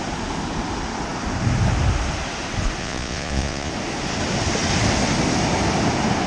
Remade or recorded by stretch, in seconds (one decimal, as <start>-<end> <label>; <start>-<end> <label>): 0.0-2.8 recorded; 2.8-3.7 remade; 3.7-6.3 recorded